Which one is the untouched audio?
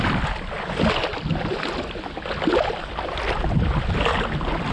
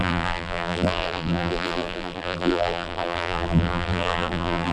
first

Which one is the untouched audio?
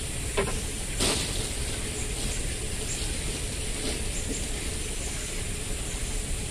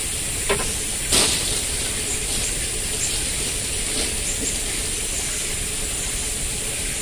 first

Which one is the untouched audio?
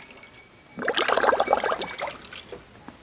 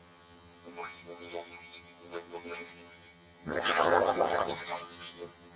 first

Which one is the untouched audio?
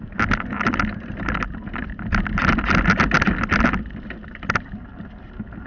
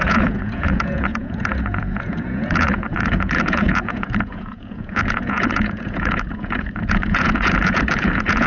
first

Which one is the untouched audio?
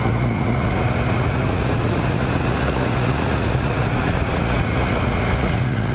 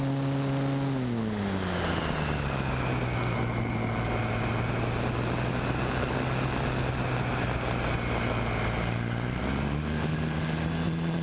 second